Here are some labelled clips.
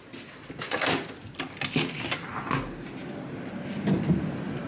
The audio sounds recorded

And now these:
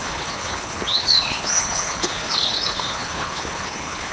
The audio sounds remade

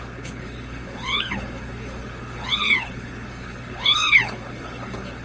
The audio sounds remade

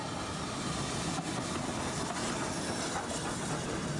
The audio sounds recorded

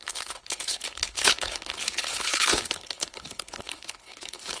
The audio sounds remade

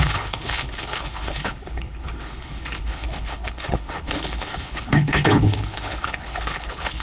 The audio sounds remade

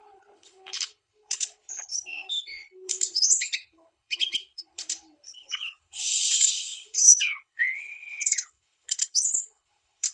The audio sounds remade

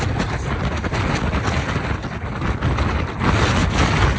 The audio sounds recorded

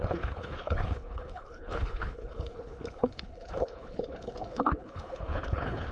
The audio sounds remade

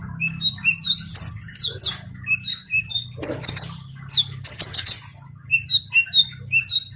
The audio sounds recorded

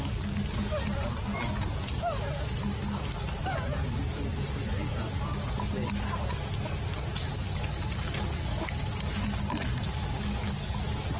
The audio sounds recorded